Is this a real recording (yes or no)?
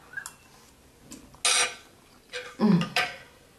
yes